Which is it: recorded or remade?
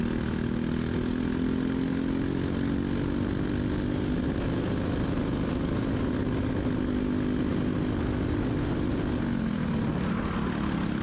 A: recorded